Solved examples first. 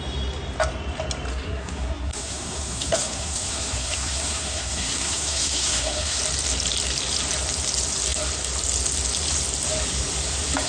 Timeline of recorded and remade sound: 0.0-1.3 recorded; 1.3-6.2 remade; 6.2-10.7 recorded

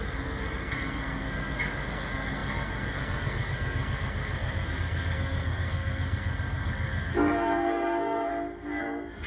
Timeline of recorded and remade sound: 0.0-8.3 remade; 8.3-8.8 recorded; 8.8-9.3 remade

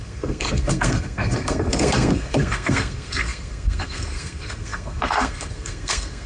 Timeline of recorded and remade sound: 0.0-6.3 remade

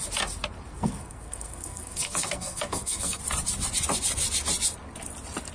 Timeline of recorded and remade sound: 0.0-0.7 recorded; 0.7-3.2 remade; 3.2-5.5 recorded

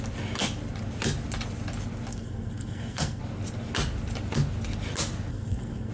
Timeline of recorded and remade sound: 0.0-2.1 recorded; 2.1-3.2 remade; 3.2-5.3 recorded; 5.3-5.9 remade

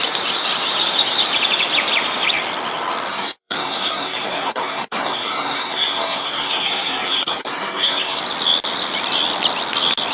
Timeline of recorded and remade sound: 0.0-3.1 recorded; 3.1-8.2 remade; 8.2-10.1 recorded

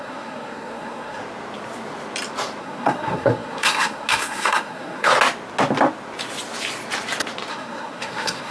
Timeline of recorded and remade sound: 0.0-1.2 remade; 1.2-2.6 recorded; 2.6-5.1 remade; 5.1-7.5 recorded; 7.5-8.5 remade